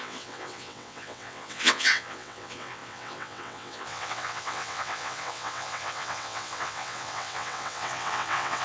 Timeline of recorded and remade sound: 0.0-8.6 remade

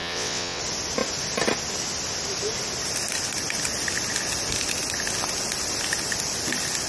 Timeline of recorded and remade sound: 0.0-0.6 remade; 0.6-6.9 recorded